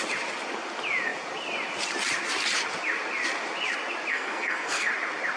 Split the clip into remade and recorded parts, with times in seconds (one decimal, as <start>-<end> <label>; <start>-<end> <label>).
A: 0.0-4.1 recorded; 4.1-4.9 remade; 4.9-5.4 recorded